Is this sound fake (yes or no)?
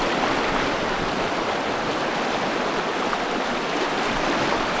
no